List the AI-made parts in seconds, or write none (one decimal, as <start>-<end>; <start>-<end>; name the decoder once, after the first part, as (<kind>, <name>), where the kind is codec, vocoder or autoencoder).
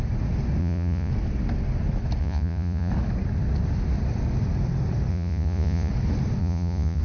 0.6-1.1 (vocoder, Vocos); 2.2-2.9; 5.1-5.9; 6.4-7.0